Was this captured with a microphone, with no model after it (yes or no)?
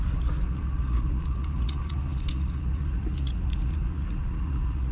no